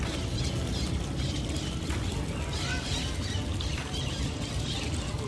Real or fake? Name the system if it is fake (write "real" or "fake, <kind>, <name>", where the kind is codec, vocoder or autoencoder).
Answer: real